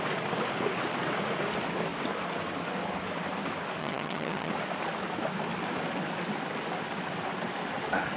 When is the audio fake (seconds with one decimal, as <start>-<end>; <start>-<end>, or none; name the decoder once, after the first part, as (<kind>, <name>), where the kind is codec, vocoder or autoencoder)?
3.8-4.5 (vocoder, HiFi-GAN)